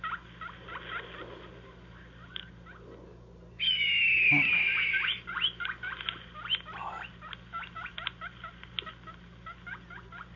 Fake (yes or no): no